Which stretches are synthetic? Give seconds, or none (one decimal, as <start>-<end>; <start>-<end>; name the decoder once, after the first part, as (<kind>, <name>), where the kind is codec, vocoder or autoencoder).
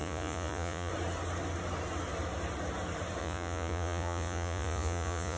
0.0-0.9 (vocoder, Vocos); 3.2-5.4